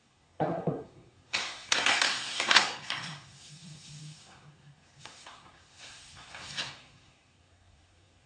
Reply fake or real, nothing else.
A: fake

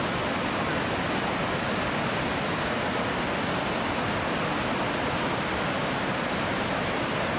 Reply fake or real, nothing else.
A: real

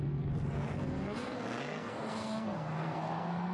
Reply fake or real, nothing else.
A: fake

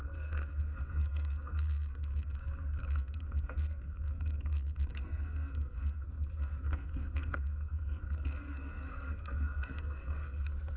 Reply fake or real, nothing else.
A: fake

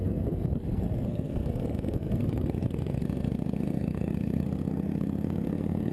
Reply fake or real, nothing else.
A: fake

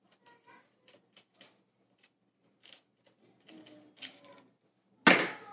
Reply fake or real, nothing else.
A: real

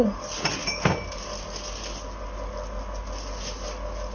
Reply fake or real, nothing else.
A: real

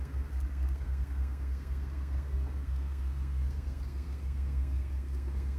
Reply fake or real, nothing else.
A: fake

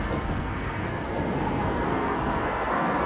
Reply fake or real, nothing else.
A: fake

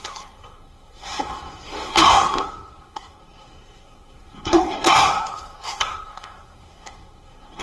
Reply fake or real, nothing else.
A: fake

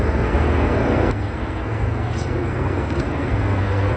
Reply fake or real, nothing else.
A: fake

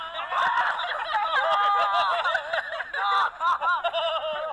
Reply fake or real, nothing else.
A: real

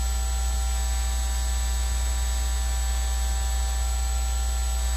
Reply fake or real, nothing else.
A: real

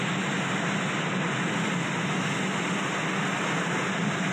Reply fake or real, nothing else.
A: real